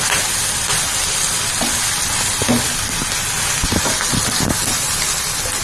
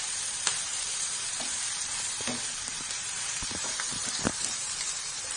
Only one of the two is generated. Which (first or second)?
second